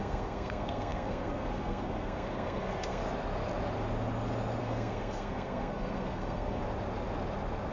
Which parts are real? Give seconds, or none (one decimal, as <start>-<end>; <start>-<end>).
3.0-4.6; 6.6-7.7